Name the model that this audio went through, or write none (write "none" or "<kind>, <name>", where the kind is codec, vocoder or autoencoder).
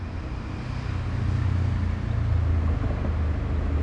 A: none